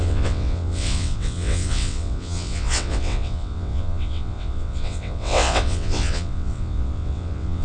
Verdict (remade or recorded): remade